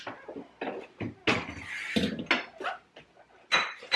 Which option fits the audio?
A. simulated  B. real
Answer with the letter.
B